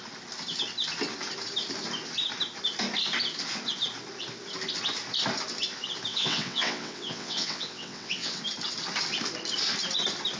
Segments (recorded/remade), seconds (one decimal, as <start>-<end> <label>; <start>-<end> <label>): 0.0-6.1 recorded; 6.1-8.4 remade; 8.4-10.4 recorded